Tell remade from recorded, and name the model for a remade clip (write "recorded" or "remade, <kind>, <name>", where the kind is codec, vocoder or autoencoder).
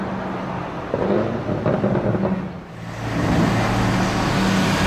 recorded